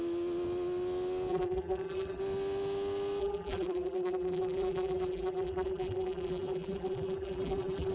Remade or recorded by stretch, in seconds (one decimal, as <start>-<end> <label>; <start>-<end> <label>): 0.0-1.3 recorded; 1.3-2.2 remade; 2.2-3.2 recorded; 3.2-7.9 remade

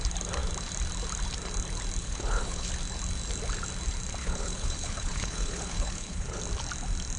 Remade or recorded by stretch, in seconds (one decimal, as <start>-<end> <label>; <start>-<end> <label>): 0.0-2.0 recorded; 2.0-2.7 remade; 2.7-4.2 recorded; 4.2-6.4 remade; 6.4-7.2 recorded